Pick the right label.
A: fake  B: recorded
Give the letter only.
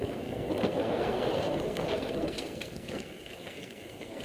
A